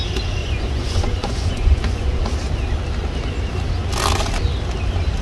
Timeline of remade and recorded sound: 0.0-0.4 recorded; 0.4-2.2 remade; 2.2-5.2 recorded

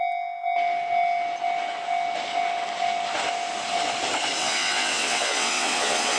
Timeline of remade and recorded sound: 0.0-4.4 recorded; 4.4-6.2 remade

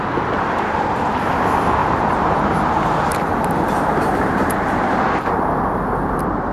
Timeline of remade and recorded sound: 0.0-1.8 recorded; 1.8-5.0 remade; 5.0-6.5 recorded

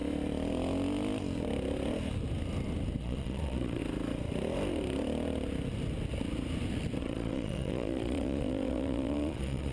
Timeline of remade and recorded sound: 0.0-3.0 recorded; 3.0-3.8 remade; 3.8-7.0 recorded; 7.0-9.7 remade